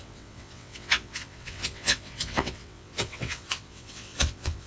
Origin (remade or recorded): remade